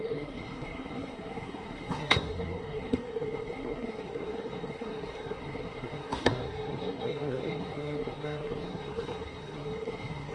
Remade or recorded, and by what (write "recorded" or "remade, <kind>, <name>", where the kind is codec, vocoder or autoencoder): remade, codec, SNAC